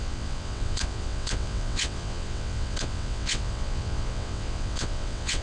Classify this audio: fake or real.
fake